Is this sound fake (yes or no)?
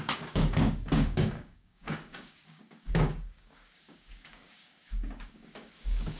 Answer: yes